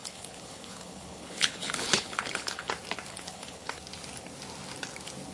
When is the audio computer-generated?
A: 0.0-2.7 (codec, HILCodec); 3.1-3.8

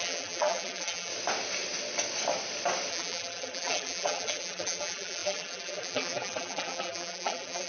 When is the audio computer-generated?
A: 0.0-1.1 (vocoder, BigVGAN v2); 2.9-7.7

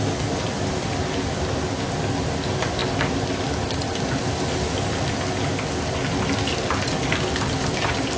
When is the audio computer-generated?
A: none

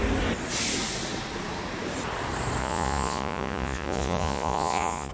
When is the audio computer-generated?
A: 2.6-5.1 (vocoder, Vocos)

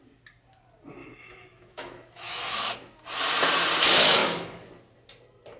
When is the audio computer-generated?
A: 1.0-2.6 (autoencoder, DAC-VAE); 4.2-4.7

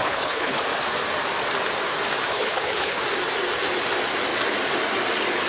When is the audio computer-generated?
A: 0.0-0.6 (codec, HILCodec); 2.3-3.0